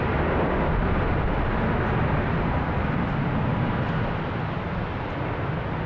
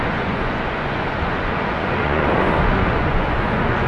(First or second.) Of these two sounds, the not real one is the second